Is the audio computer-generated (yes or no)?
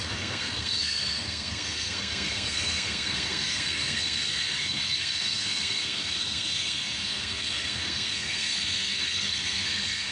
yes